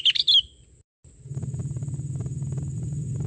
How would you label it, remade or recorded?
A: recorded